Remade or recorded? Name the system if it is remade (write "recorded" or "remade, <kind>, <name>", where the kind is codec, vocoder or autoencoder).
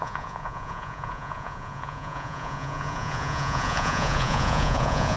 remade, vocoder, Vocos